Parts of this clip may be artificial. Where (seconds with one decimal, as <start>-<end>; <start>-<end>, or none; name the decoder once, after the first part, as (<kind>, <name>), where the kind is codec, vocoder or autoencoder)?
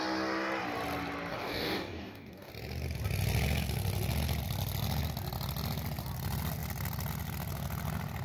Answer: 1.3-2.5 (codec, DAC)